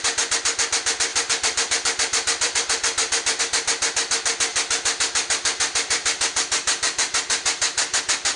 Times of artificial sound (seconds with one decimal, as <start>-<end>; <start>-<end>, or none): 1.1-3.4; 4.5-8.0